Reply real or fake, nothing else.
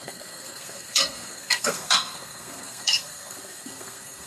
fake